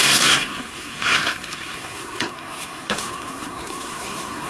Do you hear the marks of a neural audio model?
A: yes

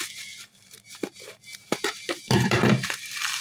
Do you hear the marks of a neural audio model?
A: yes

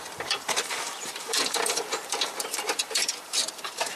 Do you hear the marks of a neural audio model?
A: yes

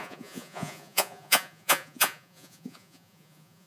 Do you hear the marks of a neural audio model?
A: yes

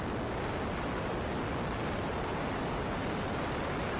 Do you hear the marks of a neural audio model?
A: no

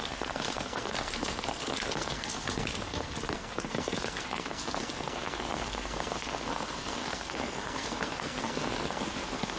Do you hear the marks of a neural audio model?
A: yes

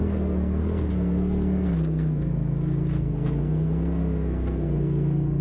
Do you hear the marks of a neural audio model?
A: yes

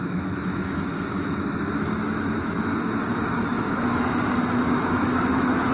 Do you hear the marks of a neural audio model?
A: yes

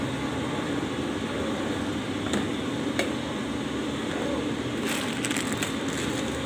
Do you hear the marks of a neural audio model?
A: no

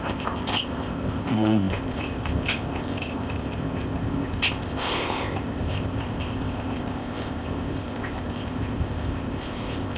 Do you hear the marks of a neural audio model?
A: yes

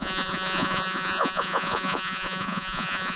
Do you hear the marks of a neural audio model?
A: yes